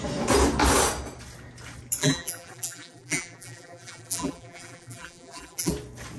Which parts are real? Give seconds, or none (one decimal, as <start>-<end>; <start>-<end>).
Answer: 0.0-2.0; 5.7-6.2